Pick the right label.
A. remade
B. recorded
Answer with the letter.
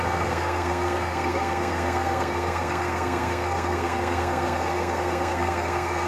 A